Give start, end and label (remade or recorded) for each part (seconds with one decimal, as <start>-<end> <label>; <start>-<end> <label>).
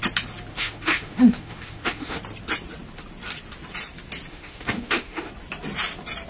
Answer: 0.0-0.5 recorded; 0.5-2.2 remade; 2.2-4.3 recorded; 4.3-5.3 remade; 5.3-6.3 recorded